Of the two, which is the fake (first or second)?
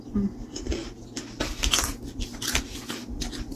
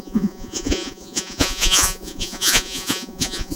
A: second